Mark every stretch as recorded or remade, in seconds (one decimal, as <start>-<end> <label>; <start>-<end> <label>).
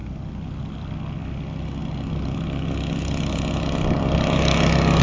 0.0-5.0 recorded